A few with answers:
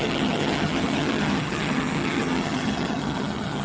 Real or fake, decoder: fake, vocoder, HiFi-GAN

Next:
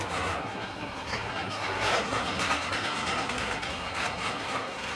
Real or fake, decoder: fake, codec, SNAC